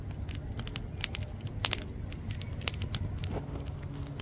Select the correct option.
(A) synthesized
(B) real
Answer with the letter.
B